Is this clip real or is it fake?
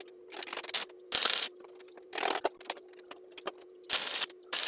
real